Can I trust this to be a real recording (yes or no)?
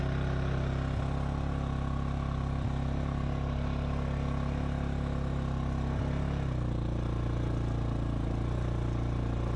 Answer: yes